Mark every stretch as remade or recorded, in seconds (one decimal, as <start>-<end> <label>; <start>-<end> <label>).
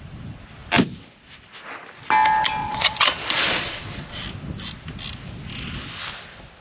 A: 0.0-2.6 recorded; 2.6-4.2 remade; 4.2-6.6 recorded